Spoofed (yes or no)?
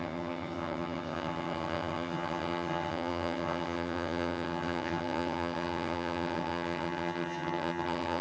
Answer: yes